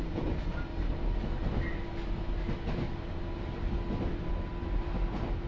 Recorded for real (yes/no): yes